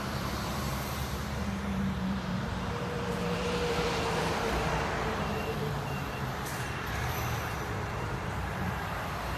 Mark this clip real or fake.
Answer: fake